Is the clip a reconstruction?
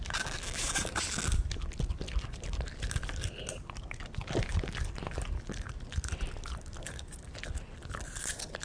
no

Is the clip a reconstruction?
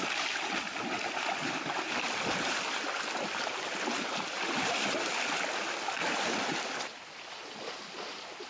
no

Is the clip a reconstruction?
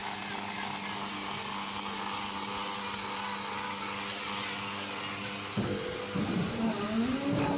no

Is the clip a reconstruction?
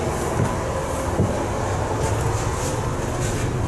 no